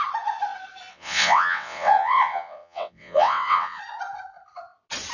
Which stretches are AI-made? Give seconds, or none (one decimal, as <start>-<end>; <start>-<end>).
0.9-3.8